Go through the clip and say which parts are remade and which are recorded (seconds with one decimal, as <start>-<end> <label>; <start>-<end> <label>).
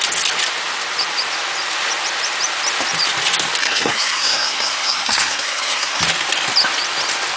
0.0-3.6 recorded; 3.6-6.0 remade; 6.0-7.4 recorded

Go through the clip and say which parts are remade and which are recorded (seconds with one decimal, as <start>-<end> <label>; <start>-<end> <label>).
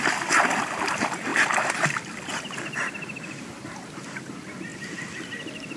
0.0-5.8 recorded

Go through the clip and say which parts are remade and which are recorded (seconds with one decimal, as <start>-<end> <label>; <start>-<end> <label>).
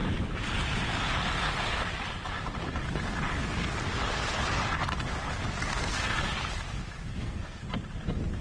0.0-5.7 recorded; 5.7-6.2 remade; 6.2-7.1 recorded; 7.1-7.6 remade; 7.6-8.4 recorded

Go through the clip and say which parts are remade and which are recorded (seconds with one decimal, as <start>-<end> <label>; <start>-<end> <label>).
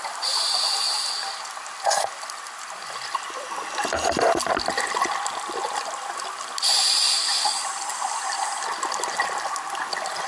0.0-10.3 recorded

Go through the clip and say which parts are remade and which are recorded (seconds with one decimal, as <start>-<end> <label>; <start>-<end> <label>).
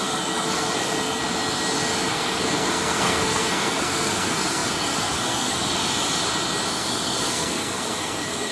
0.0-1.2 remade; 1.2-2.1 recorded; 2.1-5.8 remade; 5.8-6.7 recorded; 6.7-8.5 remade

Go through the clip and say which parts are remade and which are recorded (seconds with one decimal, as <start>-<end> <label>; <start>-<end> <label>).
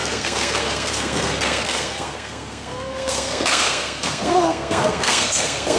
0.0-5.8 remade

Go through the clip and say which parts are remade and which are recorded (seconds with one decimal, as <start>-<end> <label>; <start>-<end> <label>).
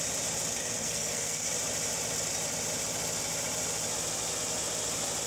0.0-0.6 recorded; 0.6-1.5 remade; 1.5-5.3 recorded